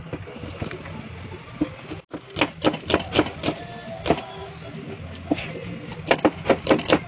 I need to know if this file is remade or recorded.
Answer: recorded